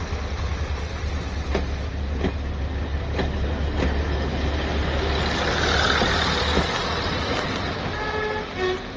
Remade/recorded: recorded